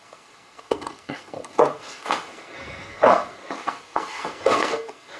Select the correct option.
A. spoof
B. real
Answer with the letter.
A